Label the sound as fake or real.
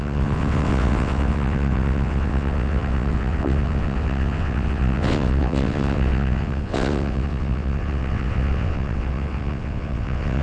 fake